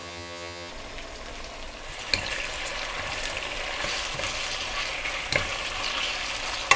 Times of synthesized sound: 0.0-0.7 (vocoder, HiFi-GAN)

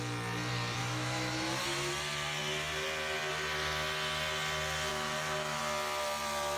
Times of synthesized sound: 0.8-1.9 (autoencoder, DAC-VAE); 4.9-5.6